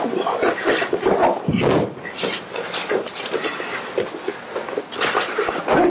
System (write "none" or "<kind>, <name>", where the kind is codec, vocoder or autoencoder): none